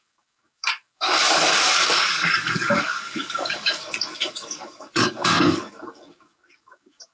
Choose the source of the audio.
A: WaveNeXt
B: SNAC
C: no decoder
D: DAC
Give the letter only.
D